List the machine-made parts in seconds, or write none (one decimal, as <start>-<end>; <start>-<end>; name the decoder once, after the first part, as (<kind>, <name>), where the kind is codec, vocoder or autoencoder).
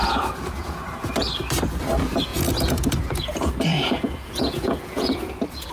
0.0-0.9 (vocoder, Vocos); 2.3-5.7